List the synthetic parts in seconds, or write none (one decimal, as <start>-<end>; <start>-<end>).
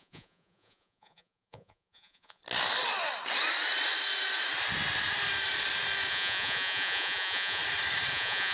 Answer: 0.0-2.4; 6.1-7.6; 8.1-8.5